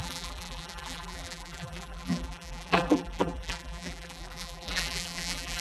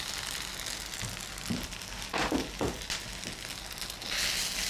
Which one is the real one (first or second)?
second